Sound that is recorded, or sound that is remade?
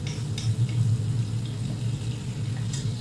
recorded